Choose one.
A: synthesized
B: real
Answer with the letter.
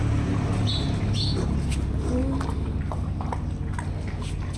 B